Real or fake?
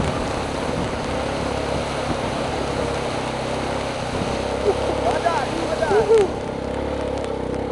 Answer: real